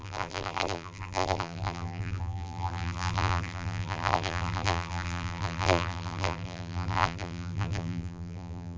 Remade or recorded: remade